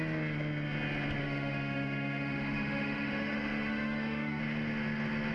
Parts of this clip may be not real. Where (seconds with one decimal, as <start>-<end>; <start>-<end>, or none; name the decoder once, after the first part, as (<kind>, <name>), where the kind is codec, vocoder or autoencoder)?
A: 1.2-4.4 (autoencoder, DAC-VAE)